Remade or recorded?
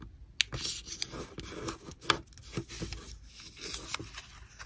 recorded